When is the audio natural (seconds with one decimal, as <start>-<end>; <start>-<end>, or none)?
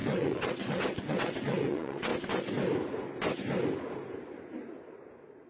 2.1-5.5